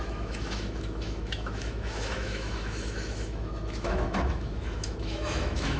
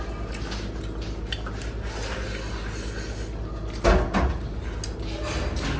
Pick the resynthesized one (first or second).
first